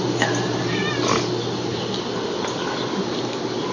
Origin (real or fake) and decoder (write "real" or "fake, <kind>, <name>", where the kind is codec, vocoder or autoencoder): real